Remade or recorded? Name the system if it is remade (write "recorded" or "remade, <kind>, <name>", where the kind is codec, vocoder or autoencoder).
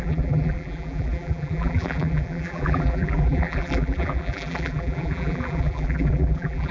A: remade, vocoder, BigVGAN v2